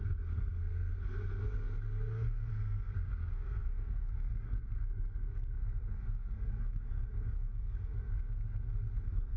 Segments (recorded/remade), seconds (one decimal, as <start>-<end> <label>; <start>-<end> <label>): 0.0-9.4 remade